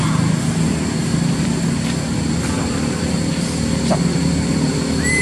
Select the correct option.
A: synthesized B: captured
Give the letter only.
B